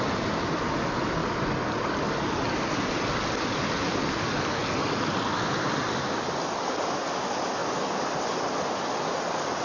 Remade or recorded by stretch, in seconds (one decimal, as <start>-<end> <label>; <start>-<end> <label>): 0.0-9.6 recorded

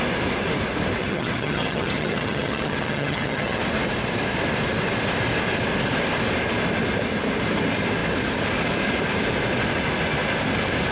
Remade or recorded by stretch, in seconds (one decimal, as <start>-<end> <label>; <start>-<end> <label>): 0.0-1.0 recorded; 1.0-3.6 remade; 3.6-10.9 recorded